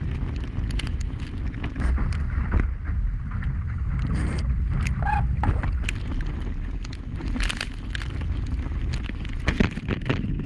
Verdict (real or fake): real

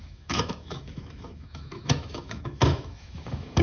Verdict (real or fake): fake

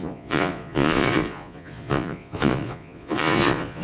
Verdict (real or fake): fake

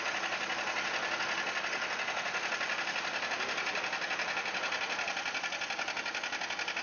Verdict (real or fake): real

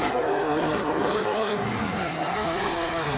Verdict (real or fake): fake